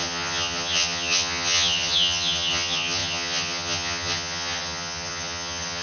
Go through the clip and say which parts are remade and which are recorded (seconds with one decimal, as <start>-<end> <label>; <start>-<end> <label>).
0.0-5.8 remade